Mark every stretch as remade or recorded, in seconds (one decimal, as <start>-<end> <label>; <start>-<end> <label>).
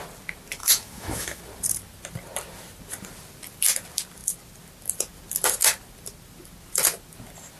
0.0-0.6 recorded; 0.6-1.4 remade; 1.4-7.6 recorded